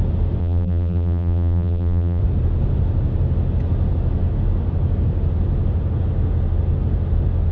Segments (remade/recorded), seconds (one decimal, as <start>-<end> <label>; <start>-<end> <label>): 0.0-0.4 recorded; 0.4-2.2 remade; 2.2-7.5 recorded